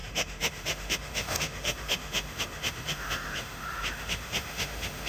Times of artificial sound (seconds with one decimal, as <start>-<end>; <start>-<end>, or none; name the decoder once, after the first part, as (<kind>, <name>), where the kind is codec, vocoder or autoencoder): 0.0-5.1 (autoencoder, DAC-VAE)